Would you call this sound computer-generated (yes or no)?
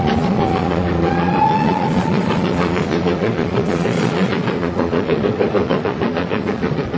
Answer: yes